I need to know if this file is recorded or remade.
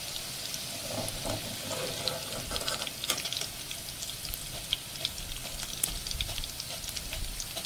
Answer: recorded